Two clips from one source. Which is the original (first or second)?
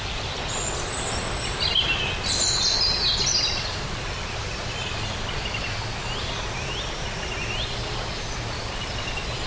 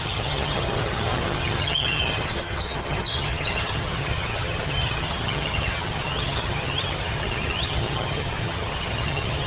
first